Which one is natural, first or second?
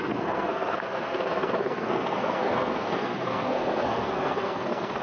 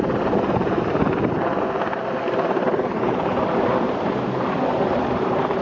second